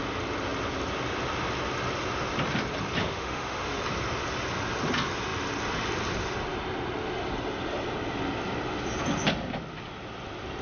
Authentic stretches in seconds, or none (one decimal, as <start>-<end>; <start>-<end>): 0.0-3.0; 3.8-10.6